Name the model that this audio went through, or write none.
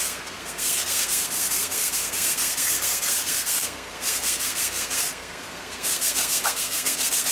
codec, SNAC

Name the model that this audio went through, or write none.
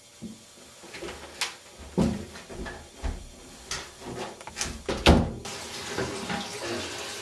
none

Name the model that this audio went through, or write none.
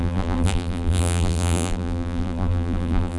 vocoder, BigVGAN v2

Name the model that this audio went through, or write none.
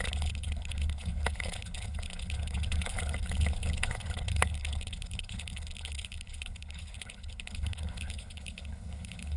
codec, HILCodec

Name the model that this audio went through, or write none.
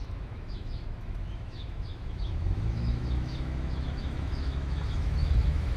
autoencoder, DAC-VAE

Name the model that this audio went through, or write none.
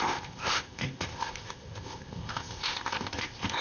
codec, ZipCodec